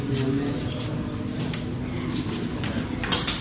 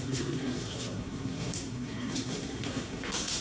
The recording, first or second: first